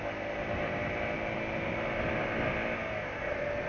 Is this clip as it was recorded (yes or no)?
yes